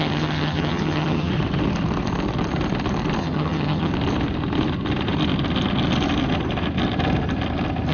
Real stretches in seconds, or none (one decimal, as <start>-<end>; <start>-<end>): 1.3-3.2; 3.9-7.9